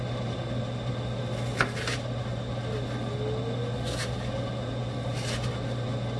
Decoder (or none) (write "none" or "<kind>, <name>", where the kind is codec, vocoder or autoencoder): none